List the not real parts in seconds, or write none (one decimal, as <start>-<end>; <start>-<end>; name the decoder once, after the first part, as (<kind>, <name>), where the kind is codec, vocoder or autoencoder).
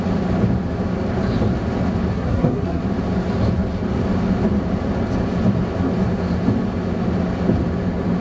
2.1-2.8 (codec, SNAC)